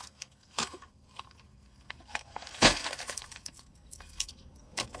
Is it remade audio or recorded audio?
remade